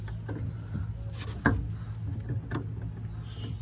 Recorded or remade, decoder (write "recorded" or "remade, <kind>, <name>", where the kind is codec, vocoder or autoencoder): recorded